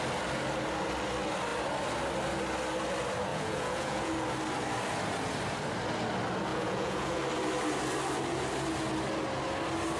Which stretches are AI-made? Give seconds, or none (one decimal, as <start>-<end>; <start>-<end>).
3.3-4.1; 6.5-7.2